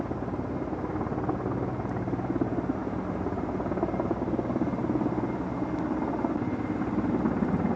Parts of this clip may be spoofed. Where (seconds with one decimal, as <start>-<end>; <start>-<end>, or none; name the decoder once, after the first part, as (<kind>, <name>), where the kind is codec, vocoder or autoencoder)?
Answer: none